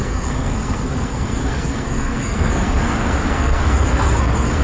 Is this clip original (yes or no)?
no